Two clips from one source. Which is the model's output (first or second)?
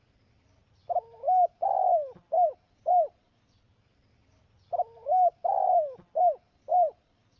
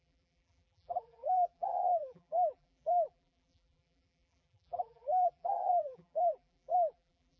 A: second